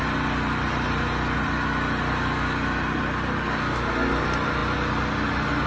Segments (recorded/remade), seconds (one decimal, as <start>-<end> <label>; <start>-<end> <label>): 0.0-5.7 recorded